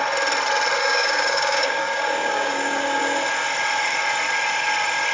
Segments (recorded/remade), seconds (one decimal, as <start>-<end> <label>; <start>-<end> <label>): 0.0-0.8 recorded; 0.8-3.0 remade; 3.0-5.1 recorded